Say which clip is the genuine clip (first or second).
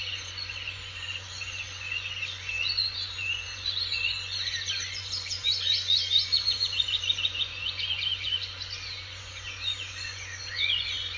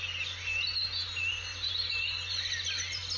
second